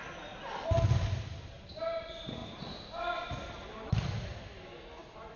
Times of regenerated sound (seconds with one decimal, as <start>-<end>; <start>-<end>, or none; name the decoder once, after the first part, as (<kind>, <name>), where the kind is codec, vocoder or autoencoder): none

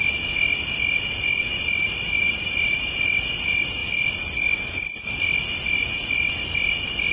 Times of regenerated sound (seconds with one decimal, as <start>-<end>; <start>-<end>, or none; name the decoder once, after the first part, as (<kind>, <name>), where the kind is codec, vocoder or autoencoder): 1.8-3.1 (vocoder, BigVGAN v2)

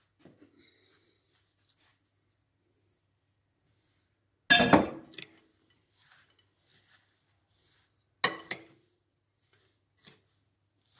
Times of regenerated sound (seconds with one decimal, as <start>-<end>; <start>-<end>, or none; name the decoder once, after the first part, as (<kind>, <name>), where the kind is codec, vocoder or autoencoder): none

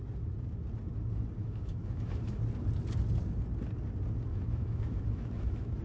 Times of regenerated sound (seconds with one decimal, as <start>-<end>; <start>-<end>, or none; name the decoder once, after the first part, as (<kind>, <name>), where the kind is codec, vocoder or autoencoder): 1.4-2.4 (autoencoder, DAC-VAE); 4.3-5.8

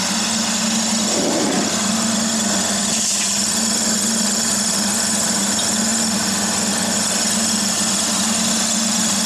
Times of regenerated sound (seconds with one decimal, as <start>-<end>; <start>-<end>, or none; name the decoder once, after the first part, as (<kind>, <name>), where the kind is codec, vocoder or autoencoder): none

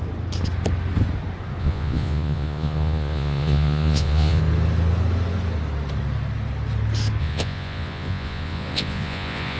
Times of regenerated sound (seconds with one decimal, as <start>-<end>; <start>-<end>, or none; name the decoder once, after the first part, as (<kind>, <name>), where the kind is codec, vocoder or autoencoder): 1.6-4.4 (vocoder, Vocos); 7.2-9.6